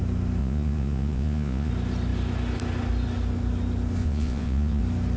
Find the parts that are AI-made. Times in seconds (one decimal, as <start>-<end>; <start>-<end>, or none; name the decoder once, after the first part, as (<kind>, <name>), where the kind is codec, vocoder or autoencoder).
0.4-1.7 (vocoder, Vocos); 4.0-4.8